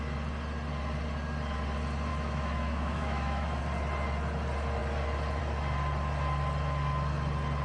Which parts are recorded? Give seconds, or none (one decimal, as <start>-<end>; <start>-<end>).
0.0-2.1; 3.6-7.6